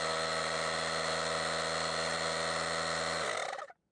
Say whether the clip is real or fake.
real